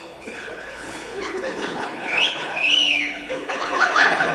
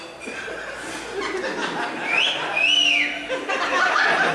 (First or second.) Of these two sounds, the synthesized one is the first